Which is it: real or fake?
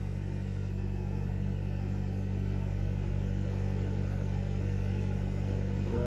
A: fake